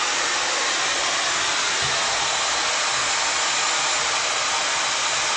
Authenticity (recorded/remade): recorded